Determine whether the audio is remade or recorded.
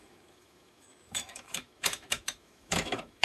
remade